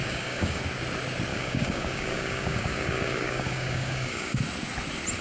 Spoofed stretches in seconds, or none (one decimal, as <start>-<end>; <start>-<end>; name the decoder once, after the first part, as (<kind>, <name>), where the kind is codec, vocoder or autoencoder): 0.0-0.6 (codec, DAC); 1.3-4.4